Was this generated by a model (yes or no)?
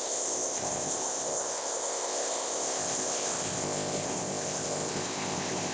yes